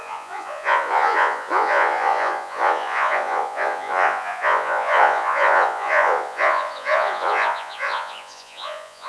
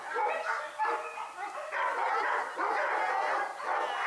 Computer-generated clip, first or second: first